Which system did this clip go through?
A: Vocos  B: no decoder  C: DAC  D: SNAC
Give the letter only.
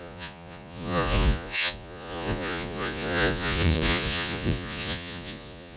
A